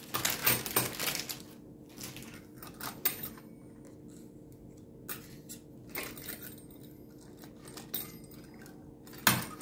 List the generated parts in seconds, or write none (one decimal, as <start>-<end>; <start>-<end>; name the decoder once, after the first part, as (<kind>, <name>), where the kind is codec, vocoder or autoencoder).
none